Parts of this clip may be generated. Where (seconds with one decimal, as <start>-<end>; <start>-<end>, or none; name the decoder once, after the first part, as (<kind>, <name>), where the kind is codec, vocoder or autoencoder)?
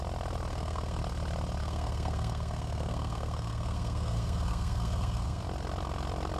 0.5-1.0 (codec, SNAC); 1.6-5.4